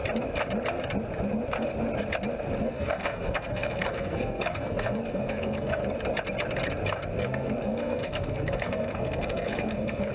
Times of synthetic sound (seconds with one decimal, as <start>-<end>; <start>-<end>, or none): 2.6-5.8; 7.2-10.1

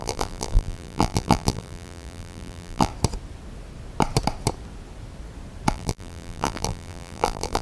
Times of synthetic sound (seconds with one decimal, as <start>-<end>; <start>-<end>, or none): 0.0-2.9; 5.7-7.6

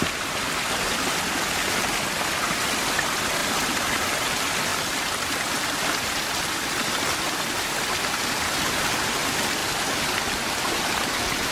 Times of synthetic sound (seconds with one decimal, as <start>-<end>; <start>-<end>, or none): none

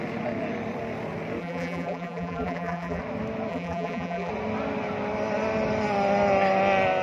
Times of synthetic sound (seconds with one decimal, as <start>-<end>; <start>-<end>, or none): 1.4-3.0; 3.5-4.3

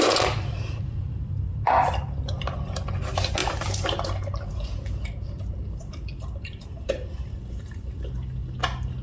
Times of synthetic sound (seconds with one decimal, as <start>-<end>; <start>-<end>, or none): 0.9-1.9; 3.4-8.1

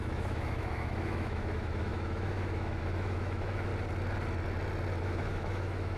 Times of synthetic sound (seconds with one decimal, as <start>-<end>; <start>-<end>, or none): 0.0-3.7; 5.0-6.0

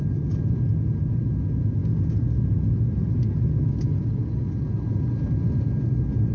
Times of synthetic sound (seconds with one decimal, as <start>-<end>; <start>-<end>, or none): none